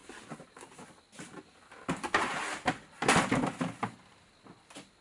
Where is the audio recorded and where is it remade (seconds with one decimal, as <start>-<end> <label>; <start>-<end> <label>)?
0.0-0.9 remade; 0.9-3.0 recorded; 3.0-4.3 remade; 4.3-5.0 recorded